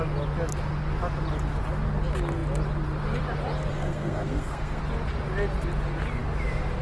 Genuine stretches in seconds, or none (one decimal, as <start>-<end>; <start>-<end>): 0.0-3.7; 4.8-6.8